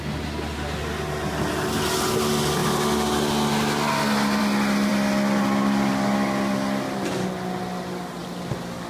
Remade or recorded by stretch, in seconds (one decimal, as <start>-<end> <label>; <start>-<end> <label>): 0.0-8.9 recorded